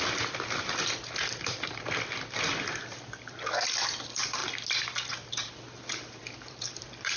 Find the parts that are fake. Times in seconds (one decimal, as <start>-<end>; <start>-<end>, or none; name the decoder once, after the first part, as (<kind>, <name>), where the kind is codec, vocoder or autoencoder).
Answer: 0.0-4.4 (vocoder, BigVGAN v2); 5.1-7.2